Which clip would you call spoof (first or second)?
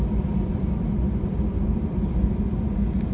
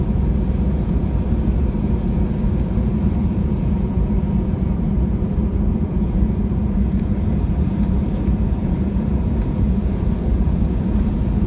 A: second